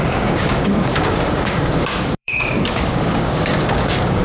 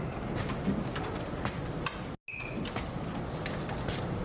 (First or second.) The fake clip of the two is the first